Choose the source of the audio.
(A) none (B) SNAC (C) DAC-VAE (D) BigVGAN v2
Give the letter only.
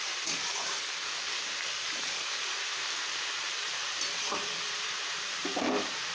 D